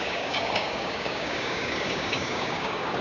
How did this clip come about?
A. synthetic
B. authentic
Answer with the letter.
A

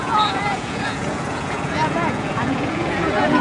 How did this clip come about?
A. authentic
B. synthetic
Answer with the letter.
B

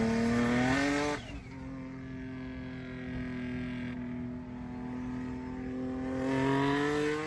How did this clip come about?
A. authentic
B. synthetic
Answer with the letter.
A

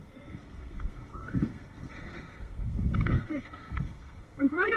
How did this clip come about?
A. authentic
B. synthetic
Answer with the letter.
B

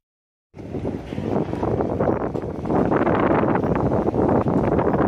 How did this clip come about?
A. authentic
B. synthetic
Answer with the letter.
B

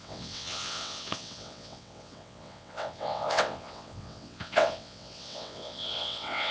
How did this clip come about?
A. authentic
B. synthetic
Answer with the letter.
B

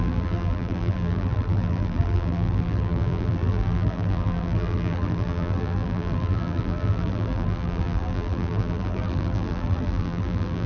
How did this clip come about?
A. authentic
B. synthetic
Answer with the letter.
B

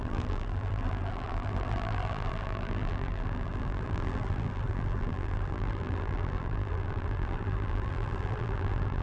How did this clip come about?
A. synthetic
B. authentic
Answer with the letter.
A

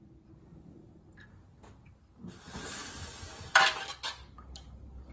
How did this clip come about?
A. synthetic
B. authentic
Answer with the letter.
B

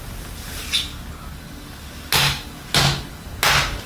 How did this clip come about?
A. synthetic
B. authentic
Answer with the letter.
B